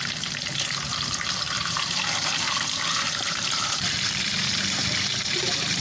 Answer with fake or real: fake